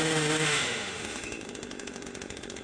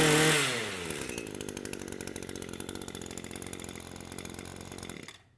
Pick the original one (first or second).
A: second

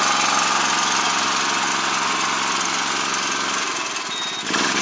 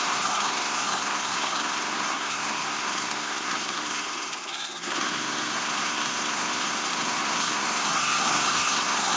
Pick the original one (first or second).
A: first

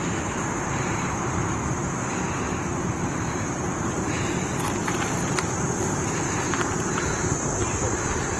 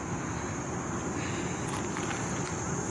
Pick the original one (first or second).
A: second